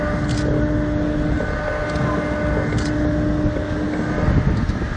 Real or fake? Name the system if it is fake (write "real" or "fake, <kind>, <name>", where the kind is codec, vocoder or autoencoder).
real